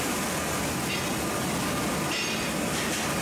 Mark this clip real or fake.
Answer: real